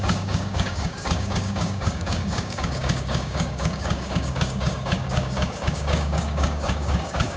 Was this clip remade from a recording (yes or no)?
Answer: yes